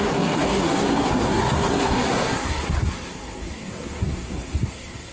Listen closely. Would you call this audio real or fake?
fake